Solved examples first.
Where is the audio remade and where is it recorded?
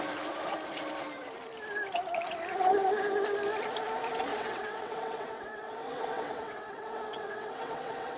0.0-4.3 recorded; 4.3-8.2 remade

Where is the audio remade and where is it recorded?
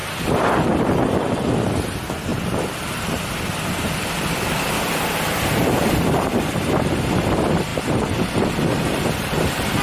0.0-0.6 remade; 0.6-2.3 recorded; 2.3-6.7 remade; 6.7-7.7 recorded; 7.7-9.0 remade; 9.0-9.8 recorded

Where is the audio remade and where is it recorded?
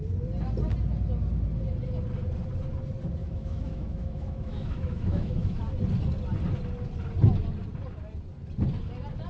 0.0-3.2 recorded; 3.2-5.6 remade; 5.6-9.3 recorded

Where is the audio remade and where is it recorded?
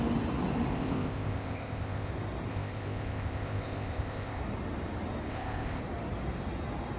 0.0-0.7 recorded; 0.7-2.1 remade; 2.1-2.5 recorded; 2.5-4.4 remade; 4.4-5.3 recorded; 5.3-5.8 remade; 5.8-7.0 recorded